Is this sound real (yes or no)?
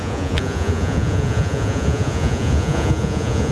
no